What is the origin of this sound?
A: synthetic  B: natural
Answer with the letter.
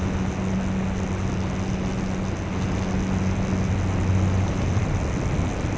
B